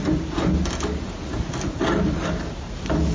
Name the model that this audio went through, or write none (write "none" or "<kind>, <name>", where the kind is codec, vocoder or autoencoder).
none